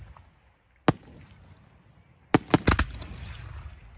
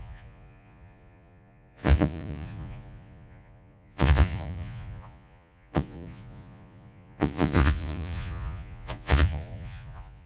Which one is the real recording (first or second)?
first